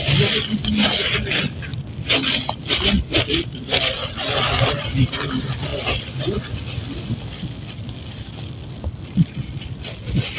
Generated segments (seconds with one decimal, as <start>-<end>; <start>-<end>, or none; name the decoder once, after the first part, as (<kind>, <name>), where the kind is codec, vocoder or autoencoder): none